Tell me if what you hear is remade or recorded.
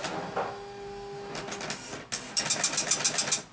recorded